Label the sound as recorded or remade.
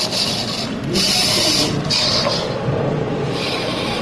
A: remade